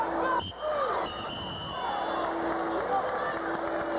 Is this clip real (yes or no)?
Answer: yes